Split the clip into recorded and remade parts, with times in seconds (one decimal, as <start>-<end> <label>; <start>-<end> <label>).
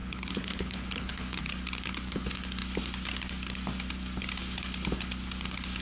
0.0-1.4 remade; 1.4-5.8 recorded